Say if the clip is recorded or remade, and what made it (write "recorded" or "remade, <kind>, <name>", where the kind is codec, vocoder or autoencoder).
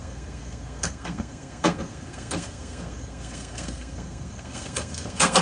remade, codec, SNAC